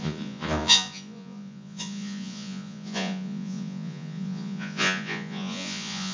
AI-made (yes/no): yes